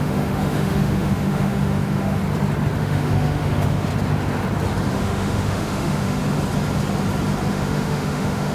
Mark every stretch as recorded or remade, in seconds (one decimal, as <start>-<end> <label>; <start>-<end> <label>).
0.0-2.2 remade; 2.2-2.8 recorded; 2.8-3.9 remade; 3.9-4.9 recorded; 4.9-6.2 remade; 6.2-7.5 recorded; 7.5-8.5 remade